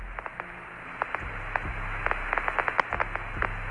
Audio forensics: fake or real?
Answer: real